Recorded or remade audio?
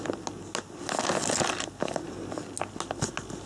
recorded